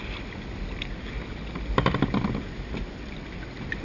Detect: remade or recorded recorded